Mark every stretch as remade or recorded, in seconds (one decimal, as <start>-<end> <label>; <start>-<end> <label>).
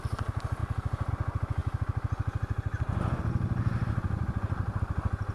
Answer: 0.0-5.3 recorded